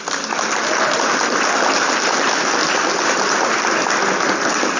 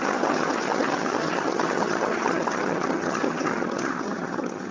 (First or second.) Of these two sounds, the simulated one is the second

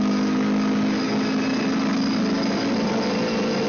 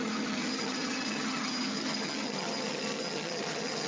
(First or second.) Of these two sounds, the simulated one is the second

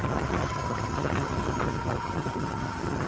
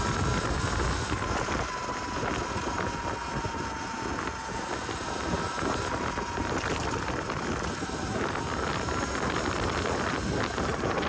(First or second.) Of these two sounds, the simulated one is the first